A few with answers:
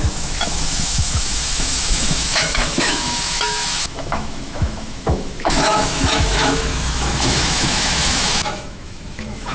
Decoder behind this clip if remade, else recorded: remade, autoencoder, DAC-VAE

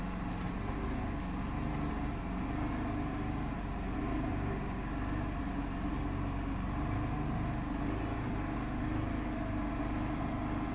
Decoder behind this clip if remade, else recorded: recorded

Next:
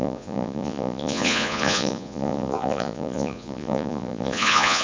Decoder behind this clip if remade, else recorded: remade, vocoder, Vocos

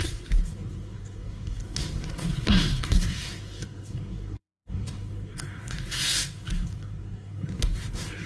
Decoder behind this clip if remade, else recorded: remade, codec, SNAC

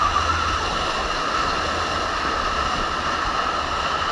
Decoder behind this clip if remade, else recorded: recorded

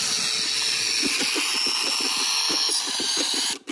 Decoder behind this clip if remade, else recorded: recorded